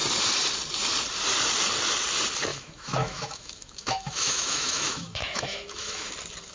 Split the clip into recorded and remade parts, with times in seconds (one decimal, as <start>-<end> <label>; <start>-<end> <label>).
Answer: 0.0-2.5 recorded; 2.5-6.1 remade; 6.1-6.5 recorded